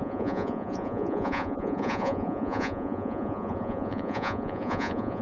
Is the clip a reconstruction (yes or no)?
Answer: yes